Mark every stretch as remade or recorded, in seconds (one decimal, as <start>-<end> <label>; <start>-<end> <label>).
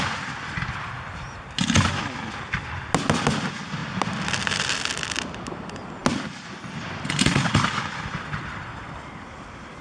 0.0-9.8 recorded